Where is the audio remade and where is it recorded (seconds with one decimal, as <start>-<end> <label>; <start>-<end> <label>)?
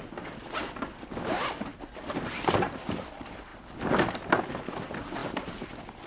0.0-6.1 recorded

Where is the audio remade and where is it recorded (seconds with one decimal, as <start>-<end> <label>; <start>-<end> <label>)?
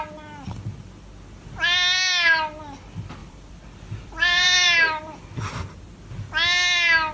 0.0-3.2 recorded; 3.2-5.7 remade; 5.7-7.1 recorded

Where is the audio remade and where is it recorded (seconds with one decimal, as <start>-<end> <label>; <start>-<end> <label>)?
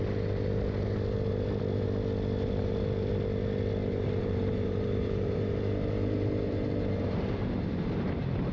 0.0-3.8 recorded; 3.8-8.5 remade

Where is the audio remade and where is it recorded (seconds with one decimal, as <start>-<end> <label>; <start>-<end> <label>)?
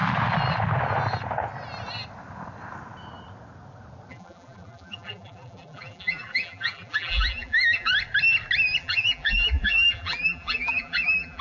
0.0-4.1 recorded; 4.1-7.9 remade; 7.9-8.8 recorded; 8.8-11.4 remade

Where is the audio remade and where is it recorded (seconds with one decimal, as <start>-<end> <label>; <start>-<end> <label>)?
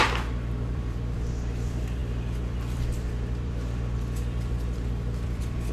0.0-5.7 remade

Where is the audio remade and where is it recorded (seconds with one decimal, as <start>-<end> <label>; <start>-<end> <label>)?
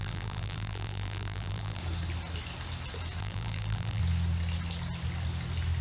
0.0-1.8 remade; 1.8-3.2 recorded; 3.2-4.0 remade; 4.0-5.8 recorded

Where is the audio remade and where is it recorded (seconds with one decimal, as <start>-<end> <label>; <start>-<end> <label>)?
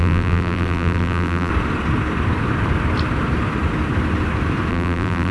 0.0-1.5 remade; 1.5-4.7 recorded; 4.7-5.3 remade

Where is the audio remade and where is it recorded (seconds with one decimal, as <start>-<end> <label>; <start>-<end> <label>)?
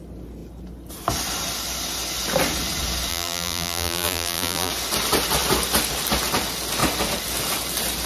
0.0-3.1 recorded; 3.1-4.7 remade; 4.7-8.1 recorded